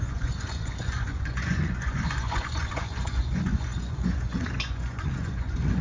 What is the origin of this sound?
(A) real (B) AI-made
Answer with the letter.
B